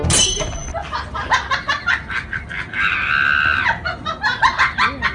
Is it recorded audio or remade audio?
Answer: recorded